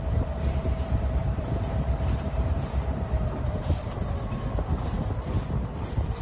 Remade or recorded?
remade